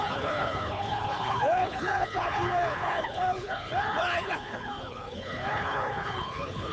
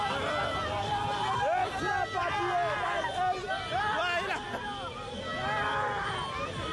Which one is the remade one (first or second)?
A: first